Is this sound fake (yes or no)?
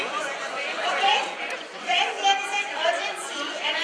yes